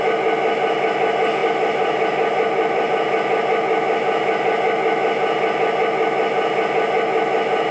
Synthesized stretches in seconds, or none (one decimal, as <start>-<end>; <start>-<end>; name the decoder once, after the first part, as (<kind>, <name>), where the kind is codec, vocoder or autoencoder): 1.4-2.9 (vocoder, BigVGAN v2)